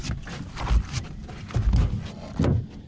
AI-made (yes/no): no